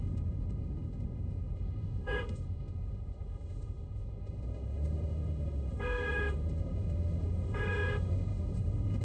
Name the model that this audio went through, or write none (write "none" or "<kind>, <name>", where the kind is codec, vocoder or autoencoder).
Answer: autoencoder, DAC-VAE